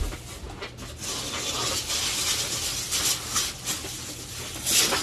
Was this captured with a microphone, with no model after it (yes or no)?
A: yes